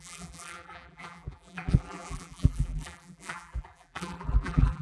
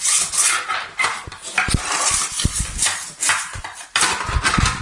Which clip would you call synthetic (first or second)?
first